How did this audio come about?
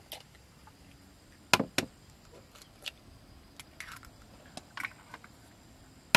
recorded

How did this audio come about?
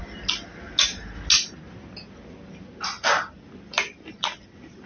recorded